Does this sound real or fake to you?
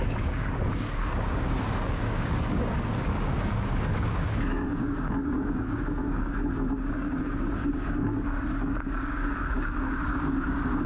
fake